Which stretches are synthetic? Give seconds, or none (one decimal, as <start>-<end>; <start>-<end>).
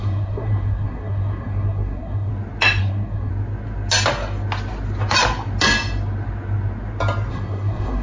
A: 0.0-2.3; 2.8-3.3; 7.3-8.0